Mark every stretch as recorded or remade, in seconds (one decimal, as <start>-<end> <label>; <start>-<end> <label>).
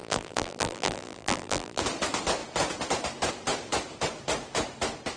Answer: 0.0-1.8 remade; 1.8-5.2 recorded